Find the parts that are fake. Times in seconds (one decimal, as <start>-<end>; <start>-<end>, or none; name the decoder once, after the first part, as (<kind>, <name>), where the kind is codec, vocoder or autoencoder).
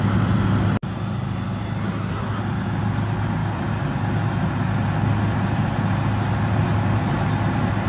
1.8-2.4 (codec, SNAC)